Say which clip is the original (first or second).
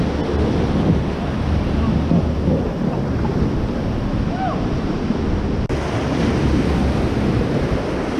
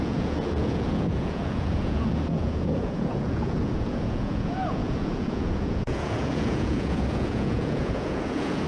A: first